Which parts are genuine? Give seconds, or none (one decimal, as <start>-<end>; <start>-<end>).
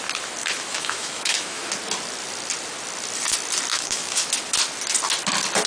0.0-0.4; 1.7-3.7; 4.3-5.7